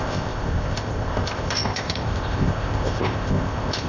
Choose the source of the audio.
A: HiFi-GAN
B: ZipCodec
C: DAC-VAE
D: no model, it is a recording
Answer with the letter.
B